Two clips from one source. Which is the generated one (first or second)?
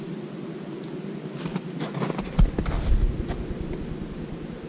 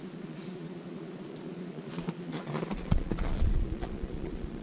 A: second